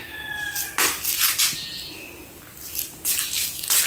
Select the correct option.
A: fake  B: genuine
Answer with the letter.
B